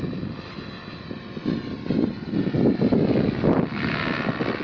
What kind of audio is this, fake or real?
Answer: real